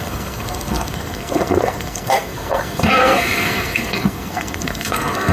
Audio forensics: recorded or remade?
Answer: remade